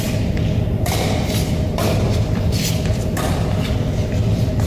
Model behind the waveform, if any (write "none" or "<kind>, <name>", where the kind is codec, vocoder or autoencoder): vocoder, BigVGAN v2